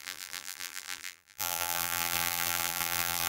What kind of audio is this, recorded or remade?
remade